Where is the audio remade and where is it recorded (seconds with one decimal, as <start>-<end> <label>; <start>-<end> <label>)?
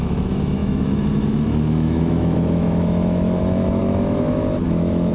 0.0-5.1 remade